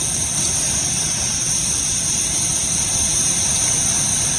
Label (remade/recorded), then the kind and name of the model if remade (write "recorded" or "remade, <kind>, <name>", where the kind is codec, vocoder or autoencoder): remade, vocoder, BigVGAN v2